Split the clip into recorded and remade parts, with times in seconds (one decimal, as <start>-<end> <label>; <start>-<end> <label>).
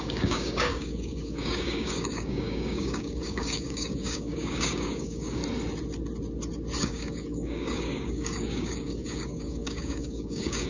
0.0-5.4 remade; 5.4-6.8 recorded; 6.8-10.7 remade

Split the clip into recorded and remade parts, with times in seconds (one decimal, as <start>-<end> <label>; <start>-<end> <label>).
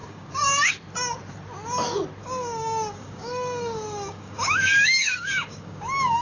0.0-0.7 remade; 0.7-2.2 recorded; 2.2-6.2 remade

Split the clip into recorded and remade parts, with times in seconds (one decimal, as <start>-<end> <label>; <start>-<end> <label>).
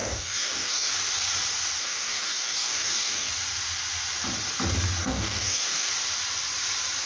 0.0-0.9 remade; 0.9-1.8 recorded; 1.8-3.3 remade; 3.3-5.0 recorded; 5.0-5.9 remade; 5.9-7.1 recorded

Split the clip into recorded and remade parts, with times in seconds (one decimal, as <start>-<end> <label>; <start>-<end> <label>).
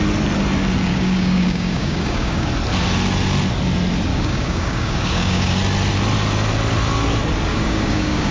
0.0-0.9 recorded; 0.9-2.5 remade; 2.5-4.1 recorded; 4.1-5.6 remade; 5.6-7.5 recorded; 7.5-8.3 remade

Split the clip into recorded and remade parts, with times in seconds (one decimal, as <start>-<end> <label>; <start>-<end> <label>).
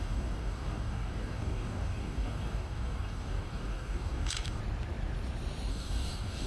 0.0-4.6 remade; 4.6-5.7 recorded; 5.7-6.5 remade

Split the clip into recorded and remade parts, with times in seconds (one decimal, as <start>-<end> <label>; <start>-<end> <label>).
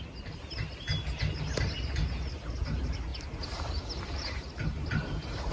0.0-5.5 recorded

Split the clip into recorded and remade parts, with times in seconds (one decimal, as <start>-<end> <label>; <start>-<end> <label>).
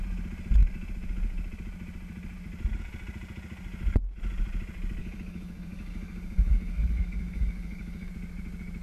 0.0-5.0 recorded; 5.0-8.1 remade; 8.1-8.8 recorded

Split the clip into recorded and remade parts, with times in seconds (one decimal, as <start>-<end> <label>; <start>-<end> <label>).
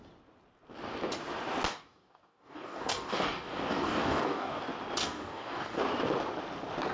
0.0-1.7 recorded; 1.7-4.6 remade; 4.6-5.0 recorded; 5.0-5.8 remade; 5.8-6.9 recorded